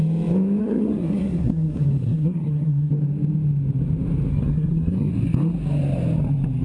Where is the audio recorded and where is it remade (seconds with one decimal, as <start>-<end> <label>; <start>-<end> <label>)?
0.0-0.6 recorded; 0.6-2.9 remade; 2.9-4.3 recorded; 4.3-5.1 remade; 5.1-6.6 recorded